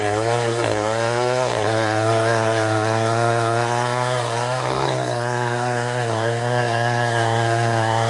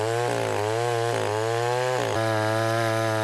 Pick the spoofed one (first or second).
first